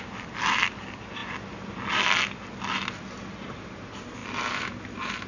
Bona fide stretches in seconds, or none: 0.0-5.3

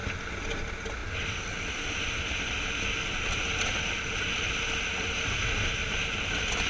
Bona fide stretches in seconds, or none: 0.0-6.7

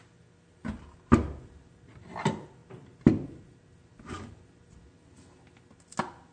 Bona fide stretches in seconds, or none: 0.0-6.3

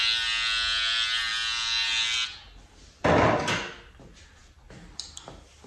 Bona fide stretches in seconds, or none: 0.0-5.7

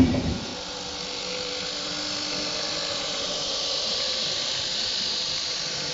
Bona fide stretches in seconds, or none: 0.5-2.9

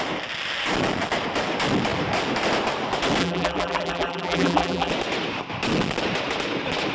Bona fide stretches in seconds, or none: 0.0-3.2; 4.9-6.9